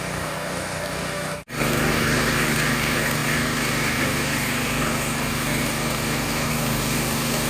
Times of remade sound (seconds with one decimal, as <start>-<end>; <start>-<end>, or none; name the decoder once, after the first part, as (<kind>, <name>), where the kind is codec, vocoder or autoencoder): 0.0-7.5 (codec, DAC)